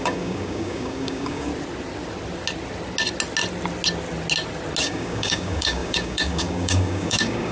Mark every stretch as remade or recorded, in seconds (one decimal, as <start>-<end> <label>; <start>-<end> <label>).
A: 0.0-1.5 remade; 1.5-4.8 recorded; 4.8-7.5 remade